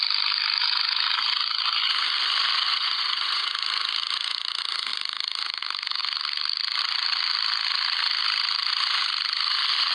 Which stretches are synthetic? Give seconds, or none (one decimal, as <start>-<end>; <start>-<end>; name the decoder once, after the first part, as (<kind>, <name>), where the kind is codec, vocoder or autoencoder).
2.7-3.5 (vocoder, Vocos)